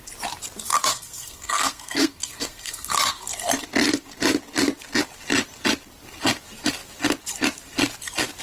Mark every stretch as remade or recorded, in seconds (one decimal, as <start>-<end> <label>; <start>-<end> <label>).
0.0-0.9 recorded; 0.9-2.9 remade; 2.9-8.4 recorded